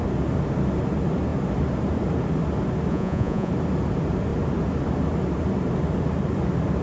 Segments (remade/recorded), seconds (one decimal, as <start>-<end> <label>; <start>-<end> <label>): 0.0-2.9 recorded; 2.9-3.5 remade; 3.5-6.8 recorded